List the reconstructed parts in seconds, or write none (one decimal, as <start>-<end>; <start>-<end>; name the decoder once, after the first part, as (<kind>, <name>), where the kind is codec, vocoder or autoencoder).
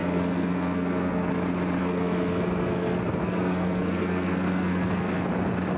0.0-1.3 (codec, SNAC); 1.8-5.3